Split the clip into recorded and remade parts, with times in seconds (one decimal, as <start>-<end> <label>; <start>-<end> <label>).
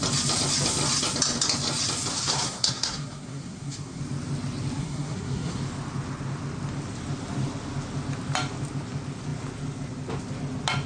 0.0-2.1 recorded; 2.1-4.0 remade; 4.0-4.8 recorded; 4.8-5.6 remade; 5.6-10.9 recorded